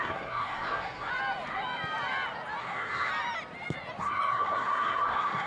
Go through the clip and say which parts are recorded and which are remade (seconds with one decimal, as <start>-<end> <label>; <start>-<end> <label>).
0.0-1.1 remade; 1.1-2.6 recorded; 2.6-3.1 remade; 3.1-4.0 recorded; 4.0-5.5 remade

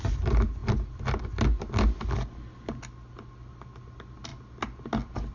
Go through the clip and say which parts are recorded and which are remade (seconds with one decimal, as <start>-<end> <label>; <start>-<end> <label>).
0.0-5.3 recorded

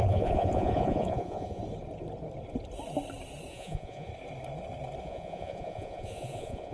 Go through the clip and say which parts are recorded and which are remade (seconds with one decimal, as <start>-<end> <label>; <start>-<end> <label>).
0.0-1.6 remade; 1.6-3.5 recorded; 3.5-4.1 remade; 4.1-5.0 recorded; 5.0-6.7 remade